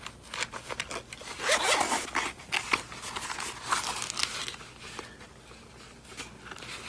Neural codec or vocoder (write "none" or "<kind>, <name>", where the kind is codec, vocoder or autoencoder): none